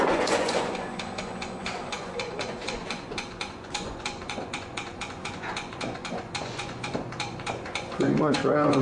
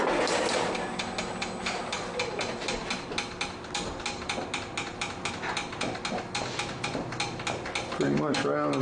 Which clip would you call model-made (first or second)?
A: first